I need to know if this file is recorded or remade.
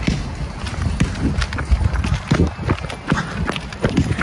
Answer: recorded